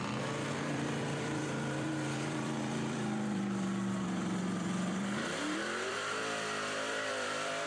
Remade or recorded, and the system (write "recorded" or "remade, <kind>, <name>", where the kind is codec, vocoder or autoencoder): remade, vocoder, BigVGAN v2